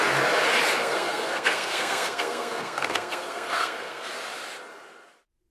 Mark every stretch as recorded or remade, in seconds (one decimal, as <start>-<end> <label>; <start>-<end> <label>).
0.0-0.8 recorded; 0.8-4.1 remade; 4.1-5.5 recorded